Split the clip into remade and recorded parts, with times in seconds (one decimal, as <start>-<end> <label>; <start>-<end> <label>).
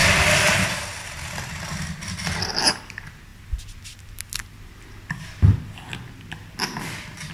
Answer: 0.0-7.3 recorded